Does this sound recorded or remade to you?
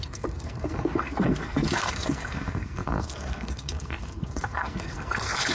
remade